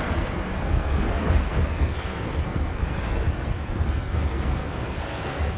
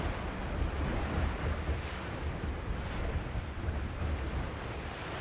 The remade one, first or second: first